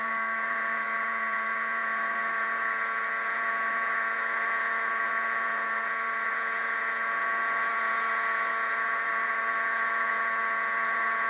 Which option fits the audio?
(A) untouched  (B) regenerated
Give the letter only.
B